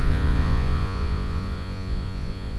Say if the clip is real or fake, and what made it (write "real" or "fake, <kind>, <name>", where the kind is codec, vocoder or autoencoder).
fake, vocoder, Vocos